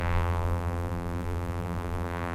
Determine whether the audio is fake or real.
fake